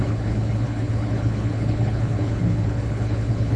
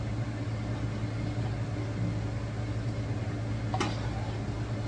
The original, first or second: second